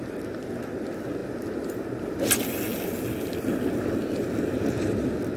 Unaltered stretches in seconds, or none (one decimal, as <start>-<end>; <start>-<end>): 0.0-5.4